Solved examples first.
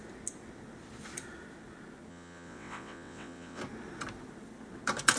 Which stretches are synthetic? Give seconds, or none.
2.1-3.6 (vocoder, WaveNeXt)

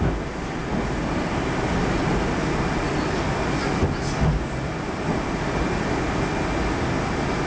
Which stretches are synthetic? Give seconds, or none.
none

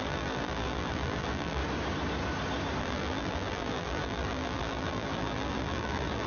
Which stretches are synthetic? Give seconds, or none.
0.0-1.6 (vocoder, BigVGAN v2); 2.8-6.3

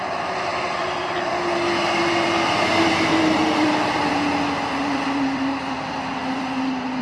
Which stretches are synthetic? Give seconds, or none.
0.0-0.5 (vocoder, BigVGAN v2); 1.9-7.0